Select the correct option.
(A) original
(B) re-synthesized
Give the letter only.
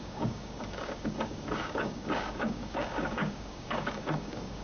B